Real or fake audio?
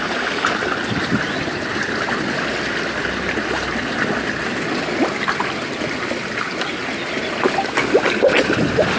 real